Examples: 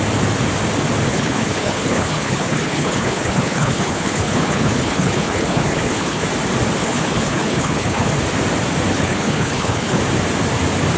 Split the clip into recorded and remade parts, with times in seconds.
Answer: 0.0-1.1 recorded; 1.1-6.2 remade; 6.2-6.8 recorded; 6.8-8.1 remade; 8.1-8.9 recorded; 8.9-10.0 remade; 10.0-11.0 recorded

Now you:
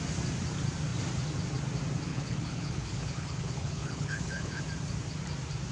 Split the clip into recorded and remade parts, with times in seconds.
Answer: 0.0-2.1 recorded; 2.1-4.6 remade; 4.6-5.7 recorded

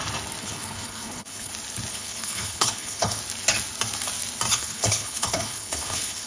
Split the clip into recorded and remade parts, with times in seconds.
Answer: 0.0-0.4 recorded; 0.4-1.5 remade; 1.5-1.9 recorded; 1.9-3.2 remade; 3.2-4.5 recorded; 4.5-6.3 remade

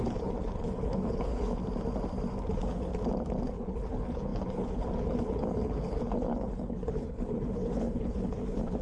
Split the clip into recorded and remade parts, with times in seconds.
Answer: 0.0-1.6 remade; 1.6-2.5 recorded; 2.5-2.9 remade; 2.9-3.5 recorded; 3.5-8.8 remade

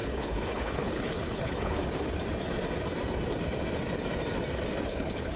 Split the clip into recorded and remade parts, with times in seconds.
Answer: 0.0-1.8 remade; 1.8-4.9 recorded; 4.9-5.4 remade

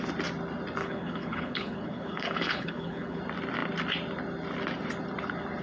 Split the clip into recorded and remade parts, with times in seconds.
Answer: 0.0-0.8 recorded; 0.8-3.2 remade; 3.2-5.6 recorded

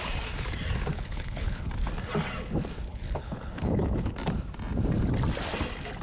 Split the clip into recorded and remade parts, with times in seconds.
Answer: 0.0-0.9 recorded; 0.9-1.7 remade; 1.7-2.9 recorded; 2.9-4.1 remade; 4.1-6.0 recorded

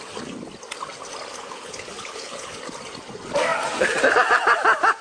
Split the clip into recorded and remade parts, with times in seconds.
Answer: 0.0-1.3 recorded; 1.3-2.6 remade; 2.6-5.0 recorded